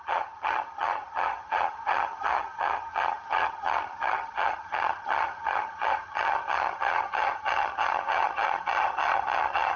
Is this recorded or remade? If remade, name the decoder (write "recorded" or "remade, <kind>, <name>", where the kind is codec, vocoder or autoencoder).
remade, vocoder, HiFi-GAN